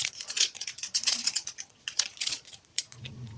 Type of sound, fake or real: fake